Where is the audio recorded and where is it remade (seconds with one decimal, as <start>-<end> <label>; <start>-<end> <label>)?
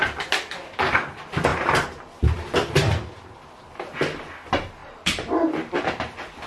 0.0-4.8 recorded; 4.8-6.5 remade